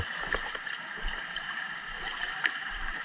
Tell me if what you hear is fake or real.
fake